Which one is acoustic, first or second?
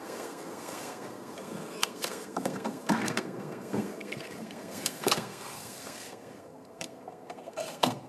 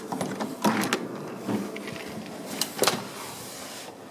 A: second